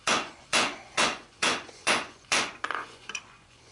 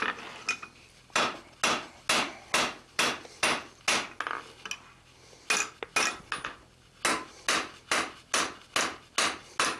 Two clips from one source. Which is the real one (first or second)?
second